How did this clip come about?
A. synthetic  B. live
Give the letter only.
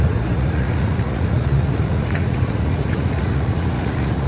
A